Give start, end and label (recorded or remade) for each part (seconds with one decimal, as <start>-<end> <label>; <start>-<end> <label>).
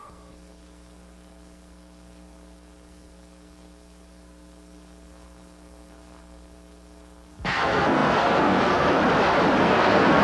0.0-9.0 remade; 9.0-9.6 recorded; 9.6-10.2 remade